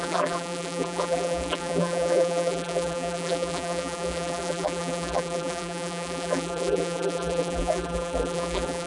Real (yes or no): no